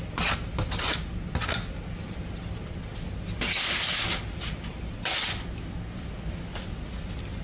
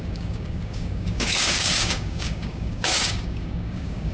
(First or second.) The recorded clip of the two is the first